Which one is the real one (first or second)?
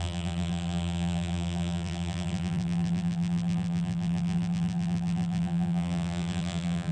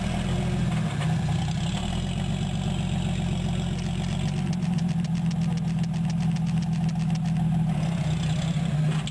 second